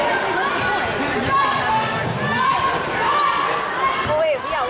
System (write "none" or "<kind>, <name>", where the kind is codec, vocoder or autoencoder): none